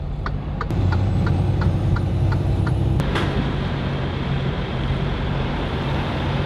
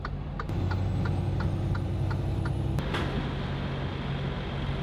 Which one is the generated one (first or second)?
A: first